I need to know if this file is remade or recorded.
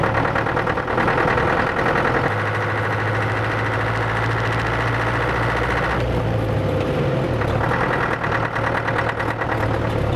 recorded